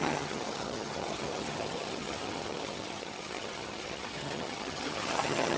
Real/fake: fake